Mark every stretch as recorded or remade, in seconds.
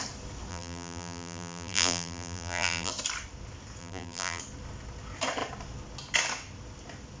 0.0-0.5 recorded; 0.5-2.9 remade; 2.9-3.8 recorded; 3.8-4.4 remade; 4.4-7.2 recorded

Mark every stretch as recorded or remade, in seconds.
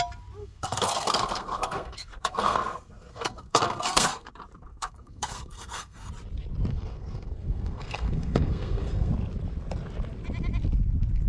0.0-0.4 recorded; 0.4-4.3 remade; 4.3-4.7 recorded; 4.7-6.1 remade; 6.1-6.7 recorded; 6.7-9.1 remade; 9.1-11.3 recorded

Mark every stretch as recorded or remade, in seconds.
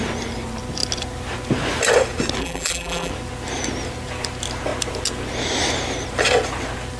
0.0-2.4 recorded; 2.4-3.1 remade; 3.1-7.0 recorded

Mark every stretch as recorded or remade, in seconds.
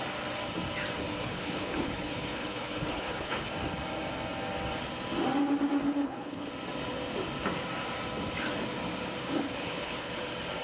0.0-1.2 recorded; 1.2-3.5 remade; 3.5-5.8 recorded; 5.8-6.5 remade; 6.5-9.2 recorded; 9.2-10.1 remade; 10.1-10.6 recorded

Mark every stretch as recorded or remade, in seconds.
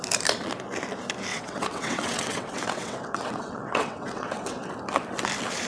0.0-1.3 recorded; 1.3-4.7 remade; 4.7-5.7 recorded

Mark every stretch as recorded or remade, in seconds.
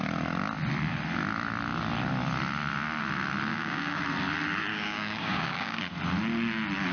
0.0-3.5 recorded; 3.5-4.0 remade; 4.0-4.7 recorded; 4.7-5.8 remade; 5.8-6.9 recorded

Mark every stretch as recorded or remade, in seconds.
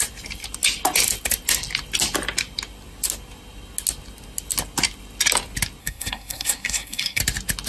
0.0-5.8 recorded; 5.8-7.2 remade; 7.2-7.7 recorded